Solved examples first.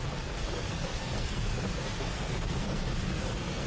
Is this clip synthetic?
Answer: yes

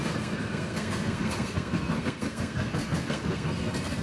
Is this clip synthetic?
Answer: yes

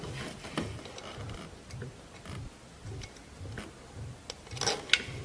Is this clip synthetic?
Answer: no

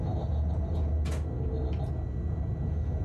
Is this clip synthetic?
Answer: no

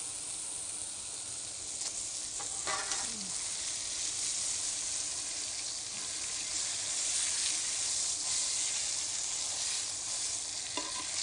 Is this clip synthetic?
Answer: no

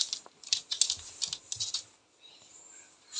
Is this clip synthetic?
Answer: no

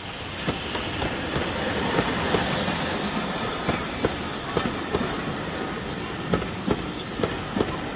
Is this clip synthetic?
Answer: no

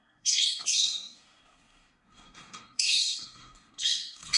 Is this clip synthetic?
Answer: yes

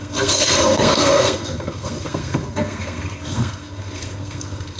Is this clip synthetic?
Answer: yes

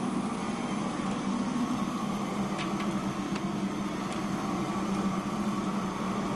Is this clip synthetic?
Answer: no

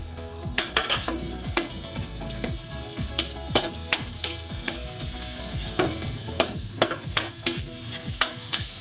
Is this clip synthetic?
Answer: yes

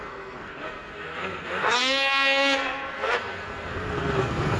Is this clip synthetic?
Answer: yes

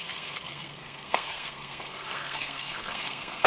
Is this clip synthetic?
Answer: yes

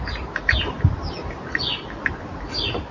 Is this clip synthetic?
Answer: no